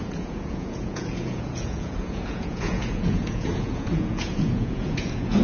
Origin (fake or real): fake